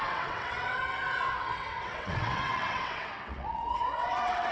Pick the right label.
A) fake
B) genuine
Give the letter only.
A